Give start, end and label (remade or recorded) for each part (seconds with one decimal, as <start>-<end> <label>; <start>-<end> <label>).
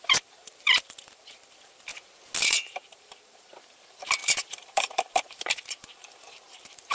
0.0-1.9 remade; 1.9-2.4 recorded; 2.4-6.9 remade